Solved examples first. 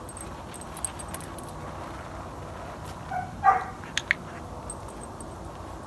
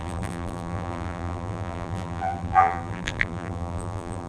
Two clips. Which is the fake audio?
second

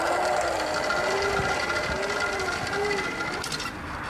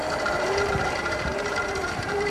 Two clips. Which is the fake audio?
second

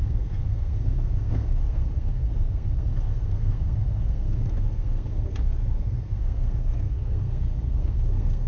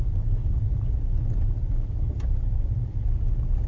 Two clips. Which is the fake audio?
first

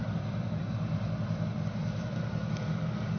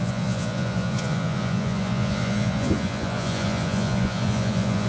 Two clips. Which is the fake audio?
second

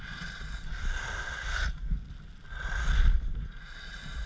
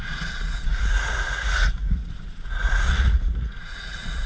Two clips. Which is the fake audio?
second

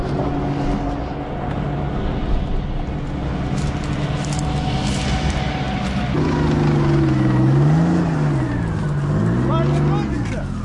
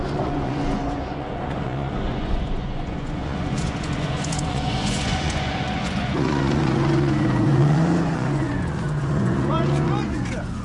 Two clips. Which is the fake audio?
second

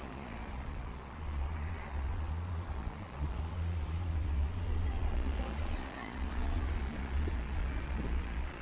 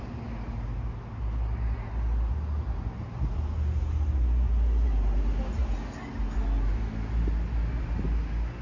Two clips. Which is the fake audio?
first